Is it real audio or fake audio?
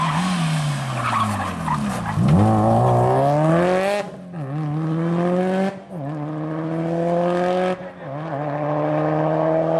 real